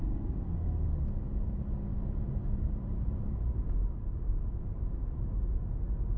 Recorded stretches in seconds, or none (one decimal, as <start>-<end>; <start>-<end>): 0.0-1.9; 3.5-4.0; 5.5-6.2